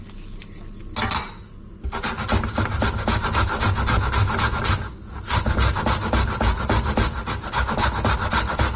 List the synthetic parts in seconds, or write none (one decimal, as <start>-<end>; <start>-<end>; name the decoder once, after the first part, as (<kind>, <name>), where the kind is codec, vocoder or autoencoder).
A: none